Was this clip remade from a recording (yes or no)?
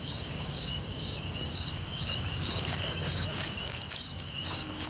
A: yes